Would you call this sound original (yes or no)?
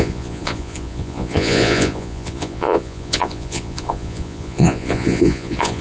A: no